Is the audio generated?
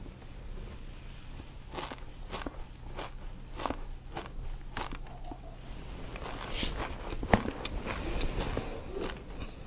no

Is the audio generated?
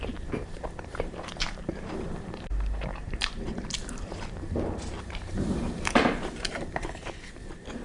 yes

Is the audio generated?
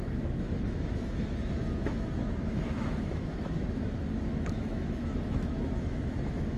yes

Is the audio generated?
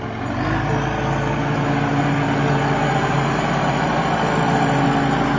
no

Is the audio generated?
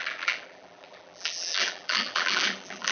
yes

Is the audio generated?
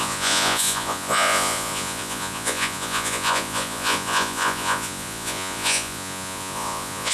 yes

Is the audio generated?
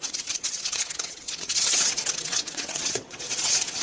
yes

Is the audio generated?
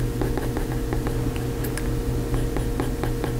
no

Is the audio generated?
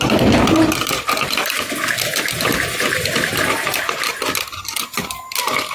no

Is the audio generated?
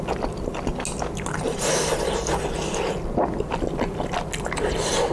no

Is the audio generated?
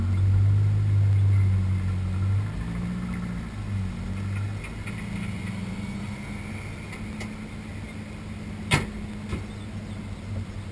no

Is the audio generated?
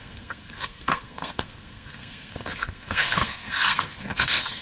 yes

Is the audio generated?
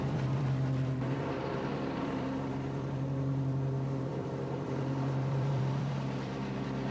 yes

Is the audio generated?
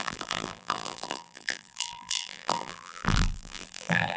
yes